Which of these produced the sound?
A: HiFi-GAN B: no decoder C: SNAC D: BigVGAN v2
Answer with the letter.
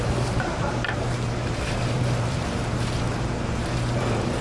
D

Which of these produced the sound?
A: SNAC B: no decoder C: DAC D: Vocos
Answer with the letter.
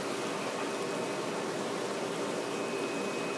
B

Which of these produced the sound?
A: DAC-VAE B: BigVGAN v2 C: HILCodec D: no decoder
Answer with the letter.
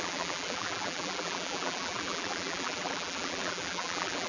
B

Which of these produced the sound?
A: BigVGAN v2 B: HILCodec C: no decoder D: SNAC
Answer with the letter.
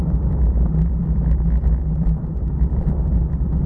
A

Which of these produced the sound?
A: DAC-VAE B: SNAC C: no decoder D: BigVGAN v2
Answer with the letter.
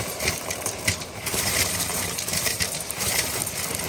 D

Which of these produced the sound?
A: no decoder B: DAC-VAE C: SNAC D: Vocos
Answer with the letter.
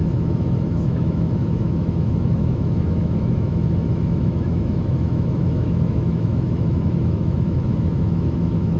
B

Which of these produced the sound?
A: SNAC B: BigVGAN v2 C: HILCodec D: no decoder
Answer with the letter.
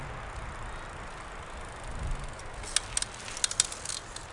D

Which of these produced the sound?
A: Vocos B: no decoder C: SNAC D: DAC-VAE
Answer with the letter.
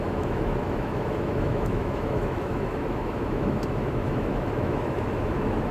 D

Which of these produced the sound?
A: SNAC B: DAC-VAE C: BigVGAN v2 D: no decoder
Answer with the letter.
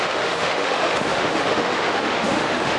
B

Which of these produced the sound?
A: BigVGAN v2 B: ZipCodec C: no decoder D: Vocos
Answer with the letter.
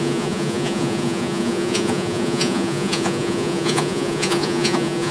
D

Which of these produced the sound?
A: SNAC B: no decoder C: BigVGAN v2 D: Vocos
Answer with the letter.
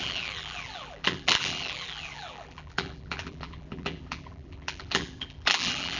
C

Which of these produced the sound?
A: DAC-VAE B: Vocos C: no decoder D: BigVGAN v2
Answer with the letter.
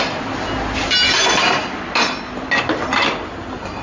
C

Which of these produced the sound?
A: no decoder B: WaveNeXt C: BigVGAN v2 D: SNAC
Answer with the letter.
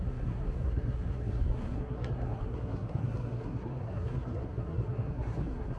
D